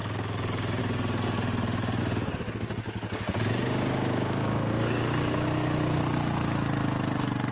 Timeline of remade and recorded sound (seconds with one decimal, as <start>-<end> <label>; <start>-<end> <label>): 0.0-2.0 recorded; 2.0-6.0 remade; 6.0-7.5 recorded